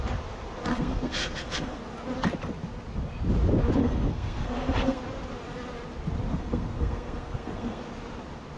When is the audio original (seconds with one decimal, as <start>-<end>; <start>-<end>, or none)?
0.0-0.7; 1.8-3.8; 5.0-6.3; 7.8-8.6